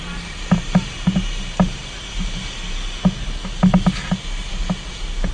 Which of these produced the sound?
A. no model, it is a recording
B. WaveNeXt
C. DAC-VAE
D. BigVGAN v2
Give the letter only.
A